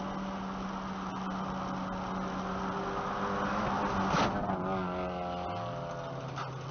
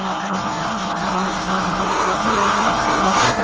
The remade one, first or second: second